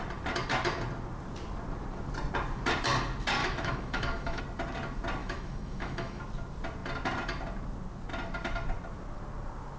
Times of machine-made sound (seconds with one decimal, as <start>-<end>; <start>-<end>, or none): 3.4-4.4; 5.2-6.2